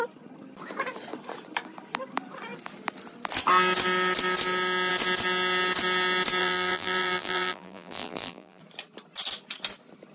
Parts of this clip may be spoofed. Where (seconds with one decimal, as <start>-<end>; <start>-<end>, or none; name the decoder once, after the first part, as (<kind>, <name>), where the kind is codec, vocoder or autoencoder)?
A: 6.4-8.6 (vocoder, BigVGAN v2)